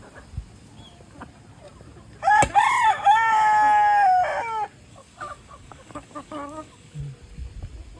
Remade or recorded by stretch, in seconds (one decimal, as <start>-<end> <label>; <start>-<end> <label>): 0.0-4.9 recorded; 4.9-7.0 remade; 7.0-8.0 recorded